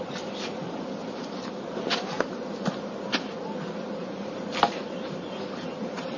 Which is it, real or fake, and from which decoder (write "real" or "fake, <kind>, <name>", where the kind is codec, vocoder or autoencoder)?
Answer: real